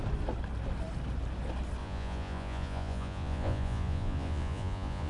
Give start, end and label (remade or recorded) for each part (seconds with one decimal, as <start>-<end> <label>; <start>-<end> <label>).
0.0-1.8 recorded; 1.8-5.1 remade